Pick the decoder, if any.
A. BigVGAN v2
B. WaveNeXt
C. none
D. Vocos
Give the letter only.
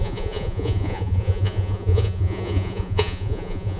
D